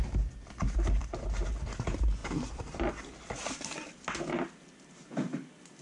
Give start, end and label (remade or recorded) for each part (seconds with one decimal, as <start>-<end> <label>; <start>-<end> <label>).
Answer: 0.0-5.8 recorded